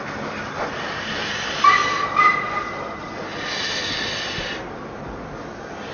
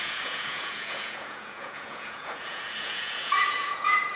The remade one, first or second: second